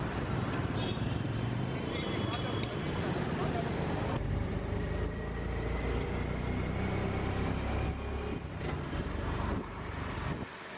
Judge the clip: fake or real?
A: real